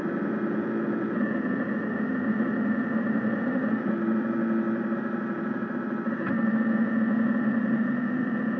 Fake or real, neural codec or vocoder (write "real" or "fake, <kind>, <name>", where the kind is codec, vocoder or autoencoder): real